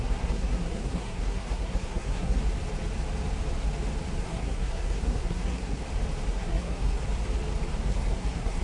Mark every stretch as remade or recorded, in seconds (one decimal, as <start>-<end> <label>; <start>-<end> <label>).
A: 0.0-2.4 remade; 2.4-4.2 recorded; 4.2-5.8 remade; 5.8-6.3 recorded; 6.3-7.0 remade; 7.0-7.8 recorded; 7.8-8.6 remade